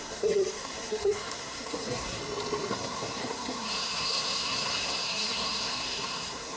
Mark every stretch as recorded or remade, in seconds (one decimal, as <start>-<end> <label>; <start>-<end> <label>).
0.0-2.2 remade; 2.2-2.7 recorded; 2.7-6.6 remade